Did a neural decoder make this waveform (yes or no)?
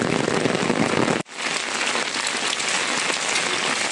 no